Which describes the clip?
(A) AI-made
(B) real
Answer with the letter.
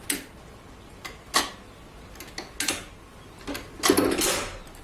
B